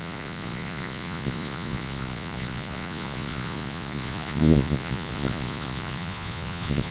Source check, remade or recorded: remade